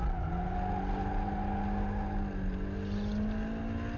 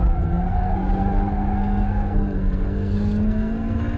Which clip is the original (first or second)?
first